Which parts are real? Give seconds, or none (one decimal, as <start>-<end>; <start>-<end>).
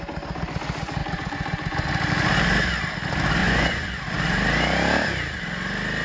0.0-1.0; 1.9-3.4; 4.0-6.0